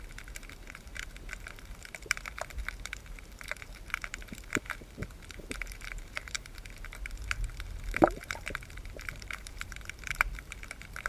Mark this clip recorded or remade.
remade